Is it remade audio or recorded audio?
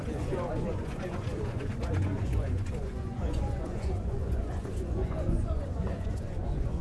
remade